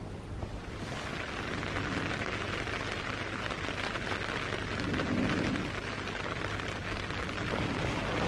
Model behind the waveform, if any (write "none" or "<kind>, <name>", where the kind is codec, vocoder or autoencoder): none